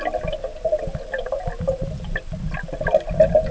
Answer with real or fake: real